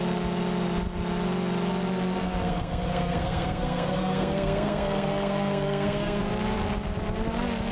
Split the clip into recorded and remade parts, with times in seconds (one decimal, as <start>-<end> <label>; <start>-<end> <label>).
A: 0.0-2.2 recorded; 2.2-6.2 remade; 6.2-7.7 recorded